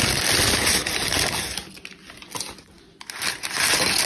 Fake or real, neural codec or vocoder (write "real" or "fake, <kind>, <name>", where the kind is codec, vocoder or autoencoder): real